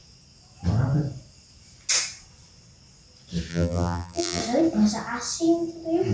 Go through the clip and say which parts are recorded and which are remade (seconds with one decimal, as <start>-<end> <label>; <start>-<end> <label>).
0.0-3.5 recorded; 3.5-4.4 remade; 4.4-6.1 recorded